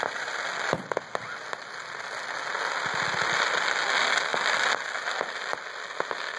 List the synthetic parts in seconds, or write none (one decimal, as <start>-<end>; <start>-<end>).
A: none

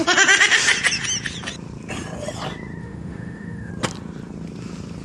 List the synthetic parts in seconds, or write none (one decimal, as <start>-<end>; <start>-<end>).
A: 2.8-3.7